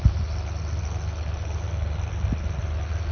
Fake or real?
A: real